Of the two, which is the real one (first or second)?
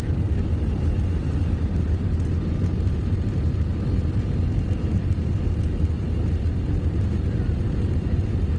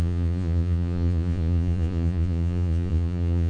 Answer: first